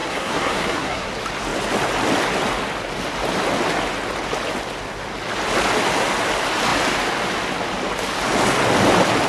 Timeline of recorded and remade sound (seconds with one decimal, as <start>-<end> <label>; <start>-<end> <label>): 0.0-1.1 remade; 1.1-9.3 recorded